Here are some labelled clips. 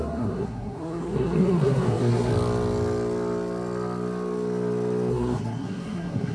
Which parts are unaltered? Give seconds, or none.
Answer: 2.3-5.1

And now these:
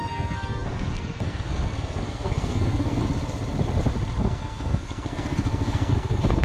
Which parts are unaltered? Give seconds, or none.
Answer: 3.0-4.2

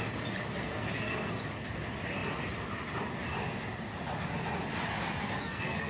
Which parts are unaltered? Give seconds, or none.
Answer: 0.0-0.6; 1.4-5.2

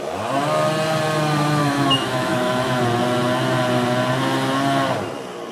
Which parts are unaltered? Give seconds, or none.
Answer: 0.0-1.6; 2.8-5.5

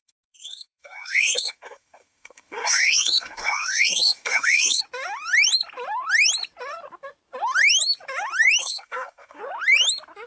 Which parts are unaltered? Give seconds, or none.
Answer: 4.8-8.6; 9.4-10.3

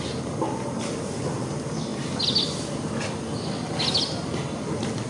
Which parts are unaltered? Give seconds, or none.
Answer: 0.0-5.1

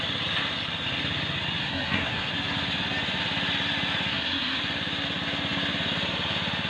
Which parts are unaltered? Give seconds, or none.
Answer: 0.0-1.6; 2.3-4.1; 4.6-6.7